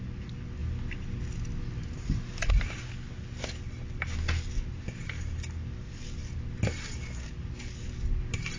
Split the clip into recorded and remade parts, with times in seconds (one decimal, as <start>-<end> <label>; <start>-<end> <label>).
0.0-8.6 recorded